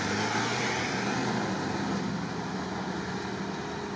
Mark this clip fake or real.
real